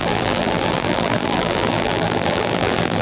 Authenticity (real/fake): fake